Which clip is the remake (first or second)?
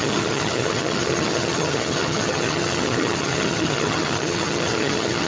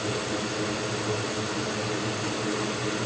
first